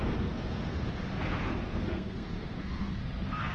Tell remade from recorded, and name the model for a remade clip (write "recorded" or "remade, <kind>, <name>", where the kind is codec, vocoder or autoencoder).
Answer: remade, codec, SNAC